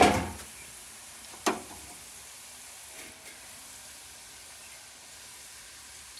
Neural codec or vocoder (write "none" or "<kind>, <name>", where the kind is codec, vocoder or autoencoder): none